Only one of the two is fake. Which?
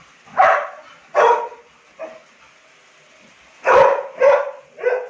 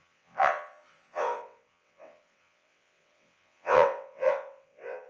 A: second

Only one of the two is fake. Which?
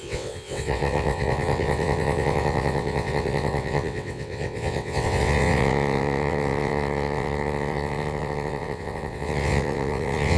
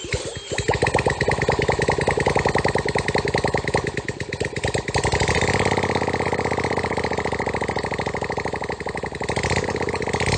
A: first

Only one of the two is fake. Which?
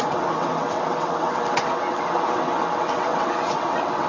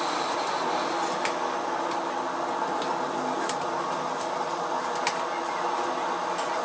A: first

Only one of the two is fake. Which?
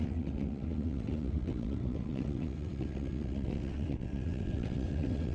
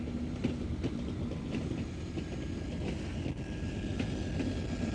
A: first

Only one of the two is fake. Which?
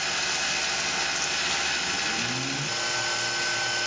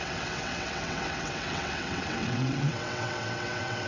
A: second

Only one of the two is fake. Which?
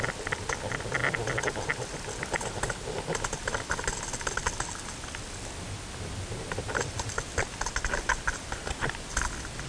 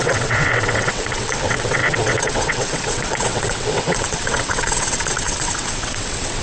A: second